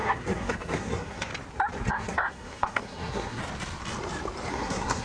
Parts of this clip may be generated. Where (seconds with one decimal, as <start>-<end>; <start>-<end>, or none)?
0.0-1.3; 1.9-3.4; 4.5-5.0